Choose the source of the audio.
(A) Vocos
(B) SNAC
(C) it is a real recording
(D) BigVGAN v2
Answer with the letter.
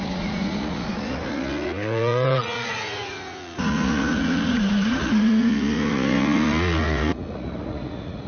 A